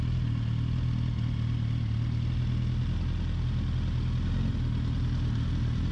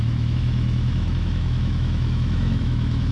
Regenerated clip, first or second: second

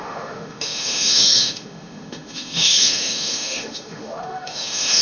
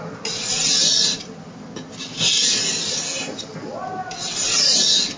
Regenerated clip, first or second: first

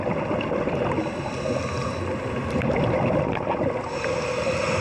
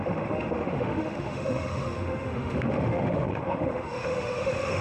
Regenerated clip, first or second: second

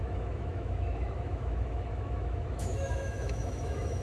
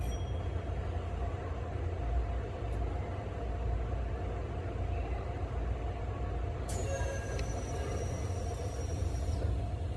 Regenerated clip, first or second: first